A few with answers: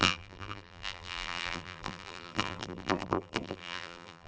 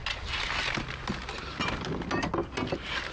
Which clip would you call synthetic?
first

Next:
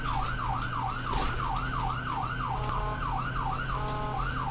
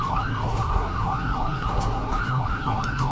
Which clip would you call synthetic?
second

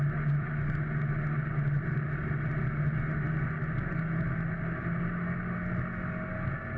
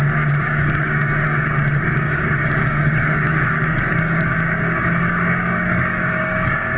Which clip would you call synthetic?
second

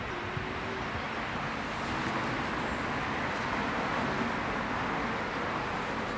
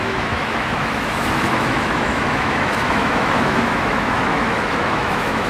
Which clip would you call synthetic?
second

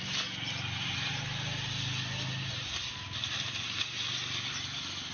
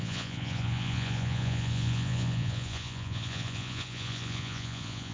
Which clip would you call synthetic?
second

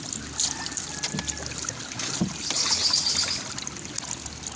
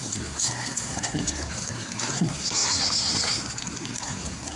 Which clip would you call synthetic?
second